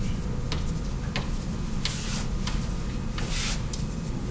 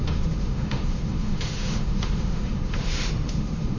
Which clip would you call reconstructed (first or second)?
second